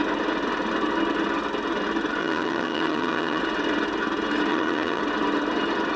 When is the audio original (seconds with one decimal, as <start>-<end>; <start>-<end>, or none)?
0.0-2.2; 3.4-4.5; 5.0-6.0